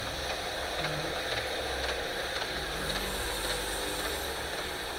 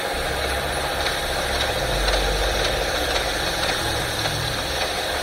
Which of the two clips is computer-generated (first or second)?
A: second